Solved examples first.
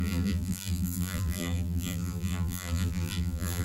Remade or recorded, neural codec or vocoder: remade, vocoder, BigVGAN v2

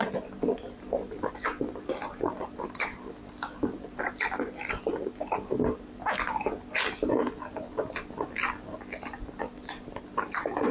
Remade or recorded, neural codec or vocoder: recorded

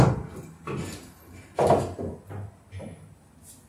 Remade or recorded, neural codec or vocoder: recorded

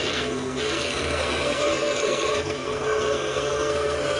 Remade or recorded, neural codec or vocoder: remade, codec, SNAC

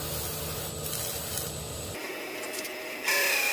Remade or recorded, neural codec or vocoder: recorded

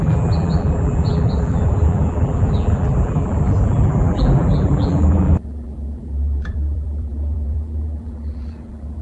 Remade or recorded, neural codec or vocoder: remade, vocoder, BigVGAN v2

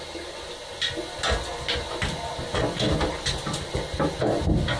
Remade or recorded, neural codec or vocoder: recorded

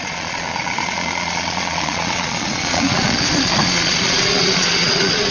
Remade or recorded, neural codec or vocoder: remade, vocoder, Vocos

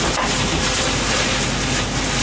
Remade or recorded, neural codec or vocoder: recorded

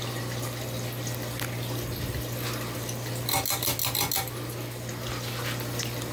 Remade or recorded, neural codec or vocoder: recorded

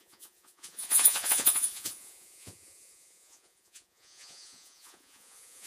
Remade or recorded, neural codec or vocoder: remade, vocoder, Vocos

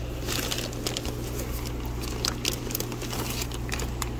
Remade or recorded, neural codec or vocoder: recorded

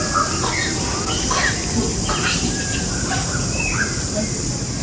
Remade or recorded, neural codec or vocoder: recorded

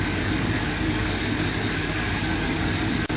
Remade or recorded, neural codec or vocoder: remade, codec, DAC